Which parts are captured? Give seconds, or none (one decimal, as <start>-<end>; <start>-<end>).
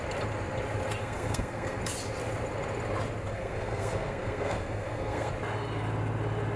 0.0-1.0; 1.8-3.3; 5.3-6.6